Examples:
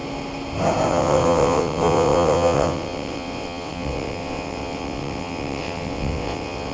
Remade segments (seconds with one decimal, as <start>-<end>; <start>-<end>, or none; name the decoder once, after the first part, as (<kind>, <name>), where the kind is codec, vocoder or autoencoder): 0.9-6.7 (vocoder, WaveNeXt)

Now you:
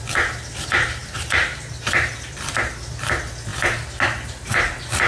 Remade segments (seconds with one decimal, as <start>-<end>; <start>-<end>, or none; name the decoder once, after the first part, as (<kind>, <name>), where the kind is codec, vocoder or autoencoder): 1.0-2.1 (vocoder, BigVGAN v2)

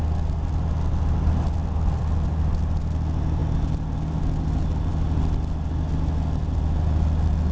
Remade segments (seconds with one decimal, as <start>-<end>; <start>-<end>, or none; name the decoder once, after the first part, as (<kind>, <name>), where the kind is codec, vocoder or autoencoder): none

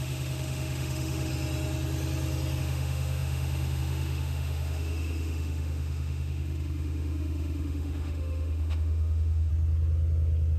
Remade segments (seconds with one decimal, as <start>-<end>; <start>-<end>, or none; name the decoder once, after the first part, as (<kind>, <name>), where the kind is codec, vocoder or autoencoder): 0.0-1.3 (autoencoder, DAC-VAE); 2.6-9.5